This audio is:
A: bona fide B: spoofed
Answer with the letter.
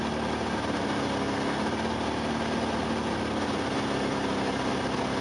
A